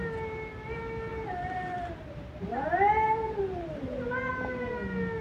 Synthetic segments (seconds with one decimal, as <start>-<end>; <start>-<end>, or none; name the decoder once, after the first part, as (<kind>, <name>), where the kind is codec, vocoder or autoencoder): 1.1-3.4 (vocoder, BigVGAN v2)